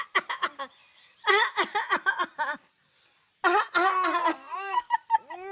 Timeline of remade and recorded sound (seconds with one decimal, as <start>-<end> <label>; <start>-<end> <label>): 0.0-4.3 recorded; 4.3-4.9 remade; 4.9-5.5 recorded